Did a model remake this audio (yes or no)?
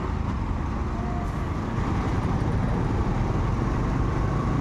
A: no